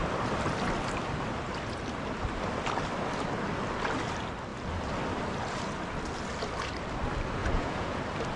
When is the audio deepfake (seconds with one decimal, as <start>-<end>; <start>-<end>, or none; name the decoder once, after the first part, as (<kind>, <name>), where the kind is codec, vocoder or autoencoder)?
7.4-8.0 (vocoder, Vocos)